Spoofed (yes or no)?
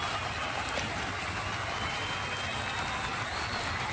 no